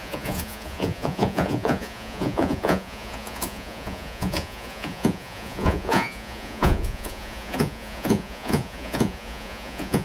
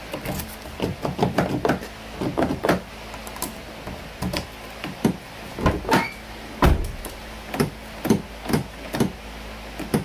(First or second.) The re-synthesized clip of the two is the first